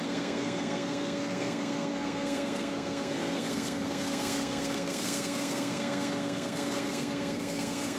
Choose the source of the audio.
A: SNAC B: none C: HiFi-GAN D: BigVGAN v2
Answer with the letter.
A